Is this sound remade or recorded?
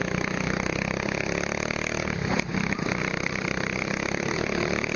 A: remade